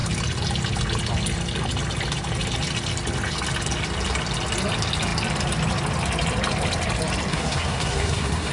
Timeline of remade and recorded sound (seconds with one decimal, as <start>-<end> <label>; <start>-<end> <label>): 0.0-7.3 recorded; 7.3-8.5 remade